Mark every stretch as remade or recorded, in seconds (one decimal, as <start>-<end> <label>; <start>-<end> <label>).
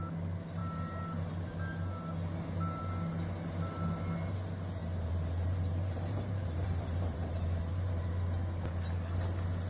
0.0-4.8 recorded; 4.8-8.1 remade; 8.1-9.7 recorded